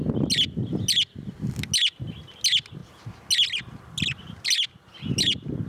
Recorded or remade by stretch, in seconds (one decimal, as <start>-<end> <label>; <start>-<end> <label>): 0.0-5.7 recorded